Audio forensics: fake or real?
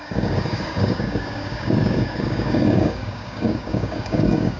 fake